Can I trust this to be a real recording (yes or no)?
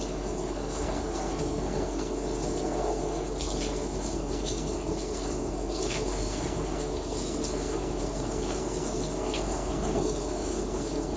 no